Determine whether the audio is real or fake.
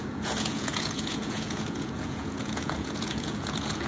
fake